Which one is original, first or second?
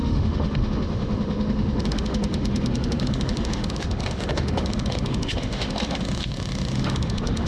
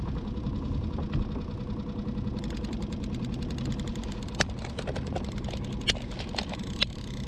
second